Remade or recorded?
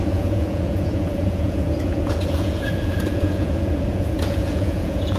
remade